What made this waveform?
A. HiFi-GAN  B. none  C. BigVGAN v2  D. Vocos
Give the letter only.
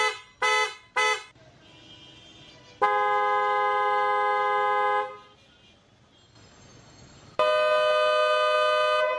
B